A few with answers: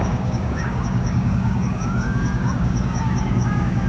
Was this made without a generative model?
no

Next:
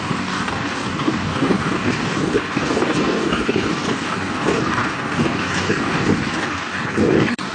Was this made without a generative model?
no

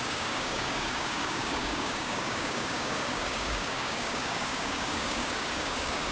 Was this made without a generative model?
no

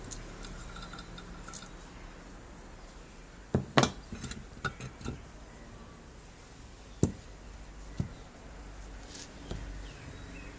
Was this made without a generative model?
yes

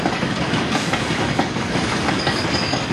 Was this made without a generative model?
no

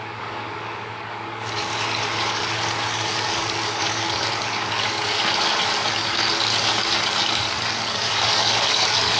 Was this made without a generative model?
no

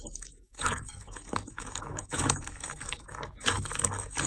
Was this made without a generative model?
no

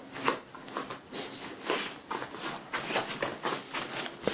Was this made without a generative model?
yes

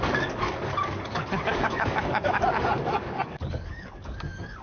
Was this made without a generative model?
no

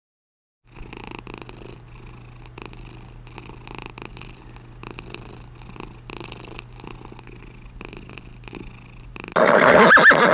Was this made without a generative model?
yes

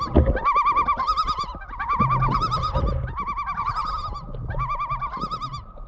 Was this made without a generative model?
yes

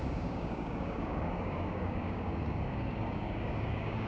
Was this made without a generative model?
no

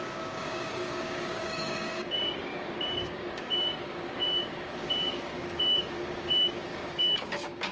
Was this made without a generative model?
no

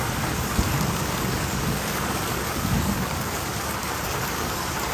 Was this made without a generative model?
no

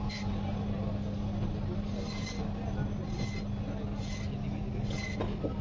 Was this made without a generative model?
yes